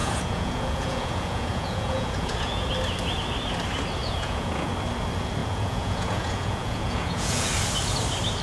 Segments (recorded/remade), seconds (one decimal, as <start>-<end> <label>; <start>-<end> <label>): 0.0-2.7 remade; 2.7-4.0 recorded; 4.0-4.7 remade; 4.7-5.4 recorded; 5.4-7.5 remade; 7.5-8.4 recorded